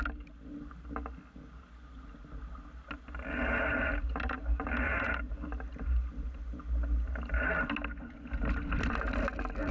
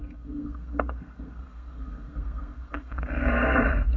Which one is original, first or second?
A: first